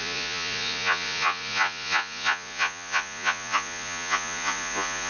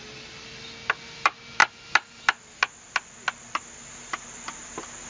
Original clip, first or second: second